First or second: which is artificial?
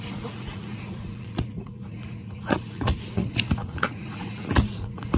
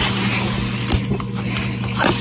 first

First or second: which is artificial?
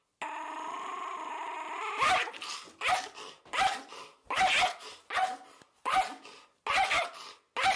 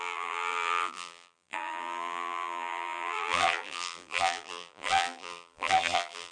second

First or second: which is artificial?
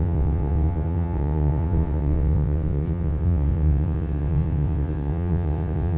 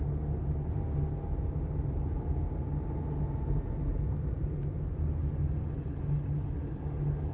first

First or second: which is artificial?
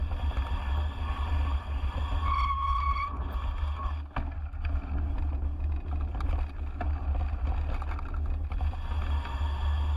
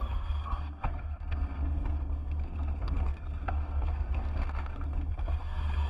second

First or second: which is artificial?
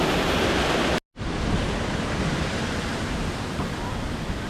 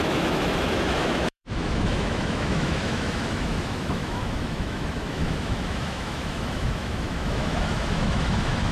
second